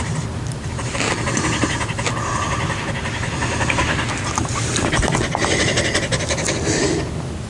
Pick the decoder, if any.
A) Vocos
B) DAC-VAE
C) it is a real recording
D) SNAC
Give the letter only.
C